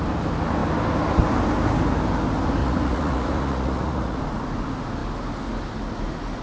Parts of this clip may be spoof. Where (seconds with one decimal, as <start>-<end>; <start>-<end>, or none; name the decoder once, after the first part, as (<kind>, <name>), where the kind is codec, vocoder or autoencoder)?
2.6-4.2 (vocoder, Vocos)